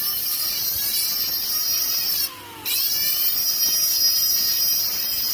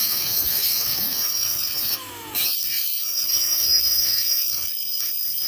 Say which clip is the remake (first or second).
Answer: second